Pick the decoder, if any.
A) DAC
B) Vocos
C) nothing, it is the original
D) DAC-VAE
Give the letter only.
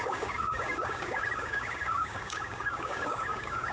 A